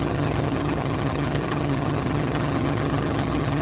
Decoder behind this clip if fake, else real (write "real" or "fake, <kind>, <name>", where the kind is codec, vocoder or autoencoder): fake, vocoder, HiFi-GAN